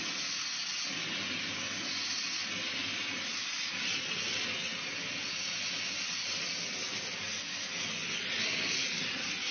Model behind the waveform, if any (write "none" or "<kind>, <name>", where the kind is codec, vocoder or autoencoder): none